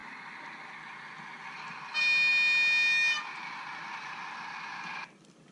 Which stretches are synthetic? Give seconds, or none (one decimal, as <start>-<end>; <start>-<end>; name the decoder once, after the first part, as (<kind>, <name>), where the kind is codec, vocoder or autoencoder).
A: none